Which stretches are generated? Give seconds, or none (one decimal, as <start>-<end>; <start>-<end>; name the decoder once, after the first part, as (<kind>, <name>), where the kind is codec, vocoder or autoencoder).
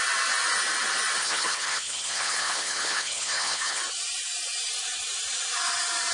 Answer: 1.2-3.8 (codec, HILCodec)